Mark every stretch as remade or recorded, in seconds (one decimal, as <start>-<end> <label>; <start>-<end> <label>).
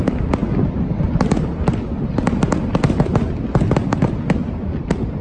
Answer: 0.0-5.2 recorded